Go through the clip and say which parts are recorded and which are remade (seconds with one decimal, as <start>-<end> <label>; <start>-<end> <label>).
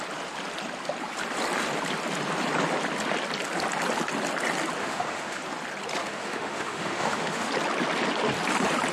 0.0-4.8 recorded; 4.8-5.4 remade; 5.4-6.0 recorded; 6.0-7.5 remade; 7.5-8.9 recorded